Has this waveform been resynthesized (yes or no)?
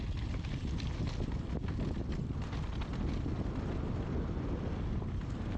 no